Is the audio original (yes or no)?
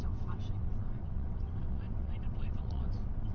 no